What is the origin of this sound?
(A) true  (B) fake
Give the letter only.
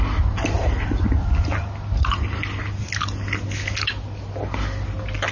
A